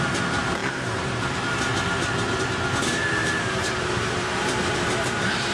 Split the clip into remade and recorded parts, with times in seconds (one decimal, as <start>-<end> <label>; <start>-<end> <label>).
0.0-1.7 remade; 1.7-2.8 recorded; 2.8-5.5 remade